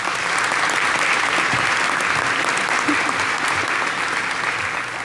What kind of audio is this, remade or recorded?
recorded